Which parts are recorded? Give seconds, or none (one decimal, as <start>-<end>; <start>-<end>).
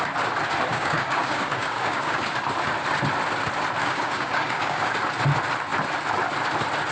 0.0-0.7; 2.2-3.8; 4.9-6.9